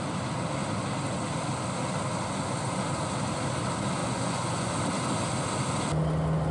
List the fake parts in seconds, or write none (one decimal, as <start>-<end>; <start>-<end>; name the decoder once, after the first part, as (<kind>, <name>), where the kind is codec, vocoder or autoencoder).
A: 4.0-4.7 (vocoder, Vocos)